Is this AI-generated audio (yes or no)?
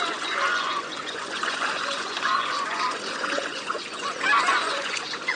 yes